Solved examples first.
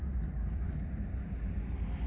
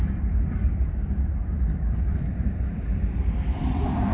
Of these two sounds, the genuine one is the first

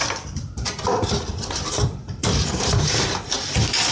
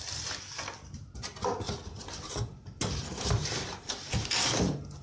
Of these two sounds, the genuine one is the second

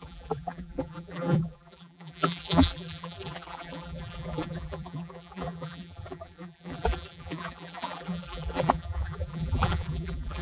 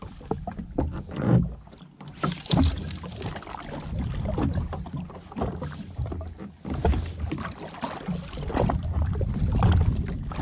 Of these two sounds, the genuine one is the second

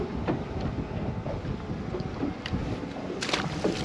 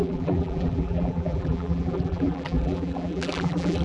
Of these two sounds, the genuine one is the first